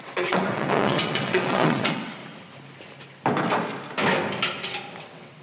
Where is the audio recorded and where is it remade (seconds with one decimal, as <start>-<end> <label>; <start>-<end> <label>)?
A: 0.0-2.2 remade; 2.2-5.0 recorded; 5.0-5.4 remade